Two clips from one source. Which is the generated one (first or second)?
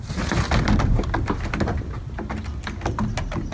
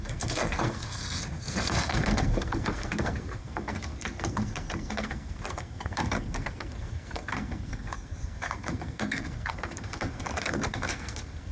second